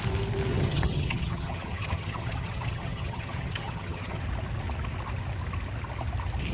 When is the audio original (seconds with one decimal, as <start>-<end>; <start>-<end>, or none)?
0.0-0.5; 4.2-6.5